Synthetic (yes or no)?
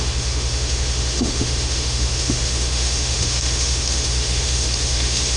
yes